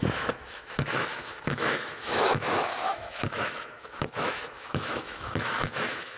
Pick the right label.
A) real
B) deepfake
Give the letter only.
B